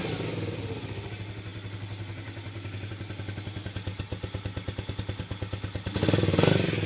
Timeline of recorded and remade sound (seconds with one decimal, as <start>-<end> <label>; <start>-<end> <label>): 0.0-6.9 recorded